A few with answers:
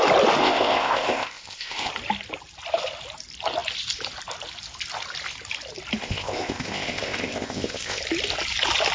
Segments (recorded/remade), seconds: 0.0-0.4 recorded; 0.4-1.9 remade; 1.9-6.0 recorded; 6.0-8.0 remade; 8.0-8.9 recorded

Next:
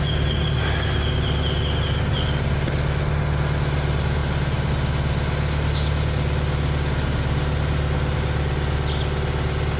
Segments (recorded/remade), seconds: 0.0-9.8 recorded

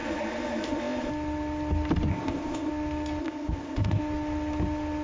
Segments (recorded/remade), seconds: 0.0-1.1 remade; 1.1-2.1 recorded; 2.1-2.7 remade; 2.7-3.2 recorded; 3.2-4.0 remade; 4.0-5.0 recorded

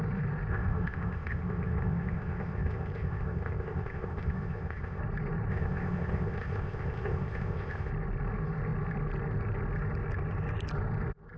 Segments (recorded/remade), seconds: 0.0-0.5 recorded; 0.5-5.0 remade; 5.0-5.5 recorded; 5.5-7.9 remade; 7.9-11.4 recorded

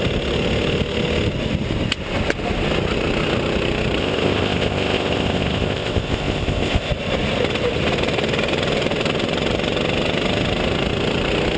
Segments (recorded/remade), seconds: 0.0-4.0 recorded; 4.0-6.9 remade; 6.9-11.6 recorded

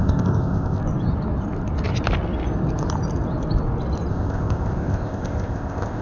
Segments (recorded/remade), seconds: 0.0-0.8 remade; 0.8-4.1 recorded; 4.1-6.0 remade

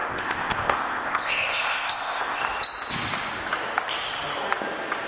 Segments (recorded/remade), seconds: 0.0-2.4 remade; 2.4-5.1 recorded

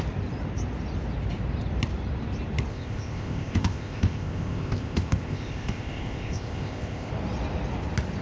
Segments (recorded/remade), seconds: 0.0-2.7 recorded; 2.7-7.1 remade; 7.1-8.2 recorded